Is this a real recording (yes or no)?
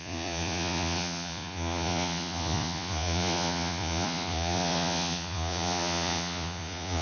no